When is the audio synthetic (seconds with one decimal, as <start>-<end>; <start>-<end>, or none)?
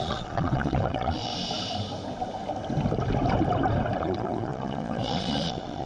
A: 0.0-1.3; 4.0-5.9